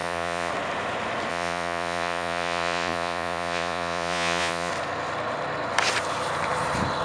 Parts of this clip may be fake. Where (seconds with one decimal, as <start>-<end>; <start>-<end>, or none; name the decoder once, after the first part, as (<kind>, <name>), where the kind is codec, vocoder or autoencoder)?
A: 0.0-0.5 (vocoder, Vocos); 1.3-4.7